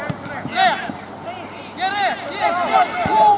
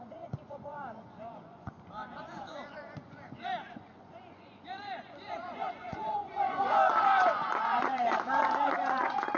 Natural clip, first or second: first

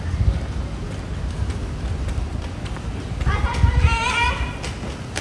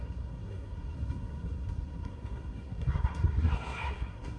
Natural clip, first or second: first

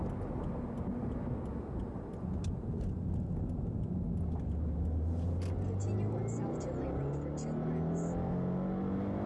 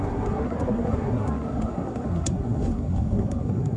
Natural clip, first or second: first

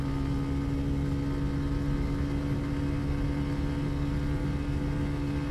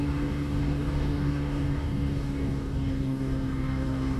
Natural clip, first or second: first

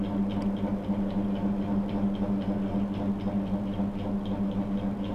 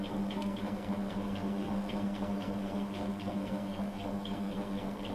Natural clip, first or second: first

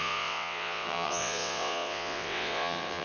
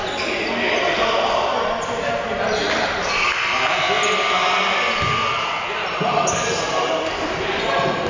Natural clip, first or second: second